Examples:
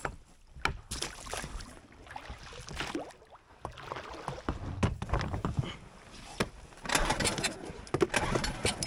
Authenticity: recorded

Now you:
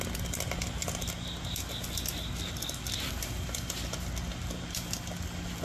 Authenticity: recorded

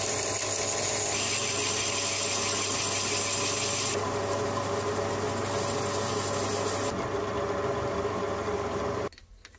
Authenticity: recorded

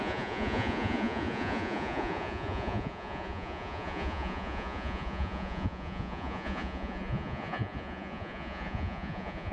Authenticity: remade